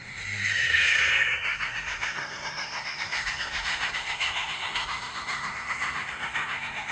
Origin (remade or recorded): remade